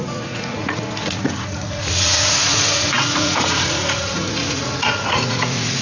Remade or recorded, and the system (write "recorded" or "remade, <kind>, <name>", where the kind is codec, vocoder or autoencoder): remade, vocoder, Vocos